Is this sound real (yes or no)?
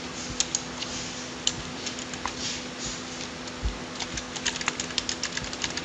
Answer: yes